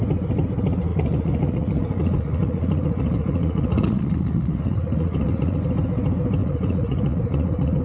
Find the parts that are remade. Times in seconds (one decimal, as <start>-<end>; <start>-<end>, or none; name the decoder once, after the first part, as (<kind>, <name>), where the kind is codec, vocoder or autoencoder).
0.9-5.6 (vocoder, Vocos); 6.4-7.8